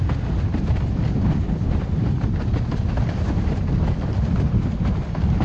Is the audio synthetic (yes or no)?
no